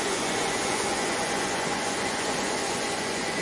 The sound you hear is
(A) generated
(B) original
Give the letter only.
A